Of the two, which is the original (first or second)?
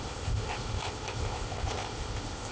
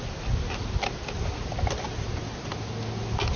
second